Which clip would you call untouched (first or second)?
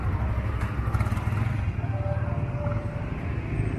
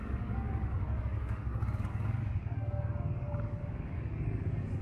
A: first